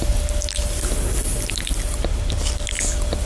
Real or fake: real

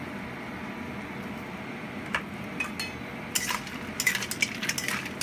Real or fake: real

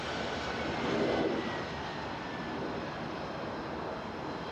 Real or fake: real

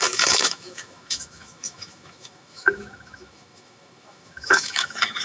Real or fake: fake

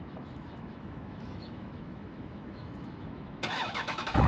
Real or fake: fake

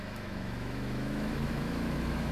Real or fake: fake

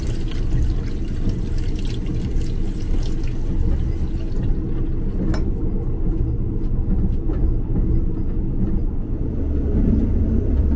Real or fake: real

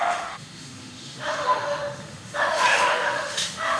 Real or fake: fake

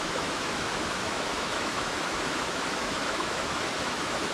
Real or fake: fake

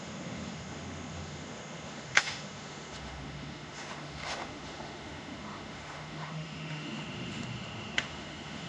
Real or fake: fake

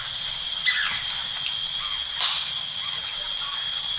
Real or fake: real